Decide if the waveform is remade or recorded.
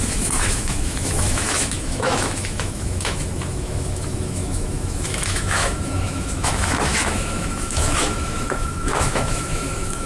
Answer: remade